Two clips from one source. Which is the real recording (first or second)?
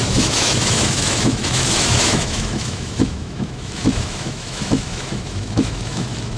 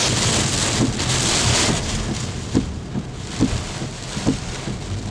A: second